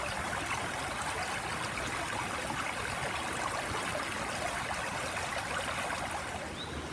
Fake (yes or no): no